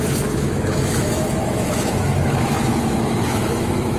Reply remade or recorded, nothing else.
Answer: remade